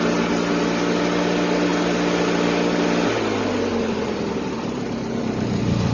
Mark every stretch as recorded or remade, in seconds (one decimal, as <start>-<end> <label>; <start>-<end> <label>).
0.0-5.9 recorded